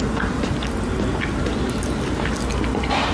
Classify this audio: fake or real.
real